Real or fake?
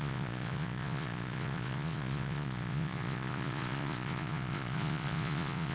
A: fake